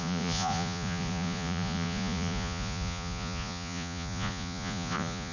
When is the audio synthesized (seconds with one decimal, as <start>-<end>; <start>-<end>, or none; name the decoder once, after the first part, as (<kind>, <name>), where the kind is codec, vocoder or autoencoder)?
0.0-5.3 (vocoder, Vocos)